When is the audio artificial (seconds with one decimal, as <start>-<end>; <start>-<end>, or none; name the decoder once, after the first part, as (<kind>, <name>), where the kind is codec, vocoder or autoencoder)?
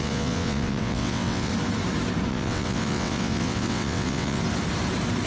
0.0-1.5 (vocoder, WaveNeXt); 2.3-4.4